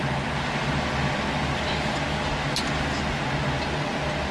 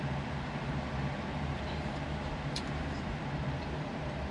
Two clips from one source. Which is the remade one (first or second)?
second